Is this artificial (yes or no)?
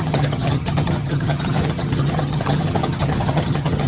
yes